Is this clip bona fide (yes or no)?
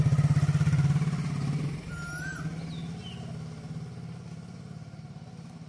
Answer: yes